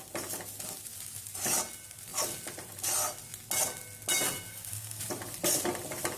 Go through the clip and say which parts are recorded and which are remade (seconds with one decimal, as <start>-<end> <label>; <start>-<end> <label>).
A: 0.0-4.5 recorded; 4.5-5.0 remade; 5.0-6.2 recorded